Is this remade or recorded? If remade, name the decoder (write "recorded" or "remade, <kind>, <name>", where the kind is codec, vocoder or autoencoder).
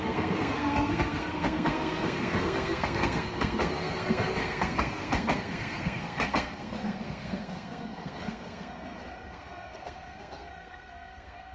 remade, codec, SNAC